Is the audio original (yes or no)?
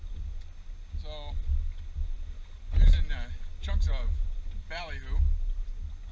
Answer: yes